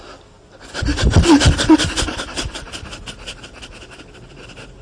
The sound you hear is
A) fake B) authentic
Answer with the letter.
B